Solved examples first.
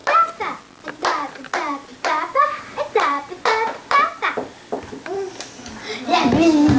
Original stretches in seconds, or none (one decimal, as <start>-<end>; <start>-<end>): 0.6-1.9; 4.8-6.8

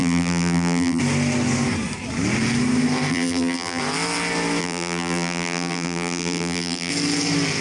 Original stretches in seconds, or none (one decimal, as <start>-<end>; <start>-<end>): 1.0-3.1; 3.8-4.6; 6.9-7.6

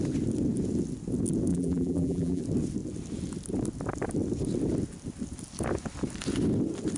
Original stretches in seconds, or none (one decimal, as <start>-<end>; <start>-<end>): 0.0-1.5; 2.4-7.0

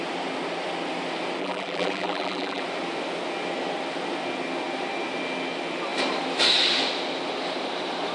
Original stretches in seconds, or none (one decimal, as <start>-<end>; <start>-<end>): 0.0-1.4; 2.6-8.1

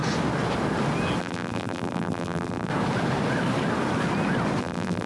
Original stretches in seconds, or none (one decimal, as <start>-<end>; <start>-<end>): 0.0-1.2; 2.7-4.6

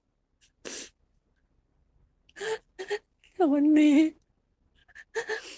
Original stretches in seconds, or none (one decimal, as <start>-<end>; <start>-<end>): 0.0-1.7; 2.8-5.6

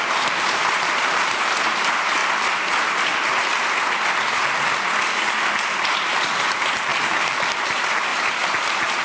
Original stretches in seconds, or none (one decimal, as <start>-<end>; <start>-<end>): 2.2-5.9